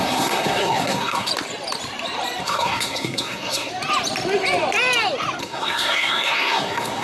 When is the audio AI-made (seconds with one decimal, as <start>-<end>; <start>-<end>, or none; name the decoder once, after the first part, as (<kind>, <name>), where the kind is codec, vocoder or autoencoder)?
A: 0.0-1.3 (codec, SNAC); 2.4-3.7; 5.4-7.0